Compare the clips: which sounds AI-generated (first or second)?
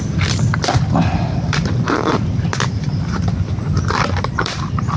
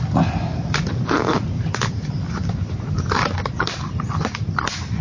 first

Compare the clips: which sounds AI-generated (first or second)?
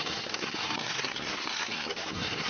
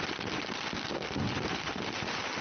first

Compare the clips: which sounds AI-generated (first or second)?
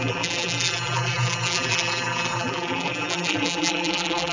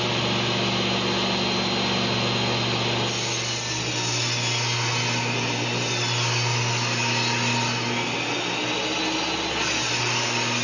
first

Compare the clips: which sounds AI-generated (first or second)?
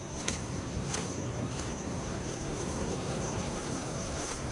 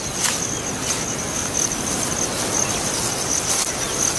first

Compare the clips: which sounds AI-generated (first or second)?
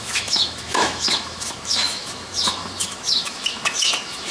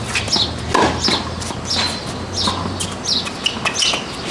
first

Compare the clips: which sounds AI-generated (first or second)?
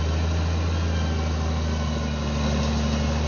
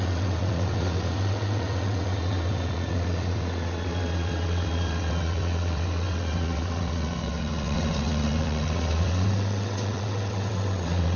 second